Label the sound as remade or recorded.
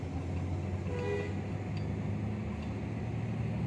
recorded